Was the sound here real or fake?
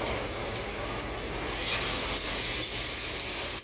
real